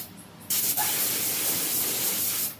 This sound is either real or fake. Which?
real